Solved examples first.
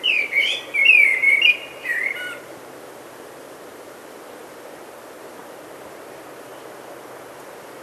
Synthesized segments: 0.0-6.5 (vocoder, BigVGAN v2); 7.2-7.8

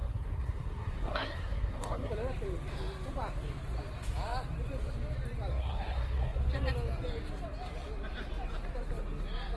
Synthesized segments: 0.0-2.1 (codec, SNAC); 5.5-6.4